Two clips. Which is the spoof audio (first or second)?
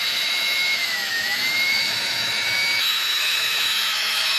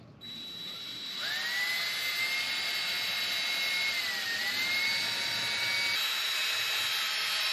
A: first